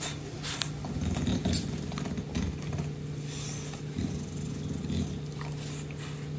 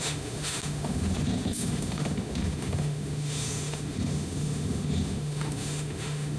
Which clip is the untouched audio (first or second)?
first